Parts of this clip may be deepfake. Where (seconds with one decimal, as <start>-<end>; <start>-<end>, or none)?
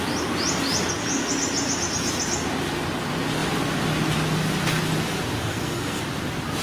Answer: 5.5-6.0